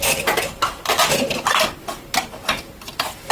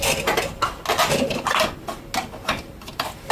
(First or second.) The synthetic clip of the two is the first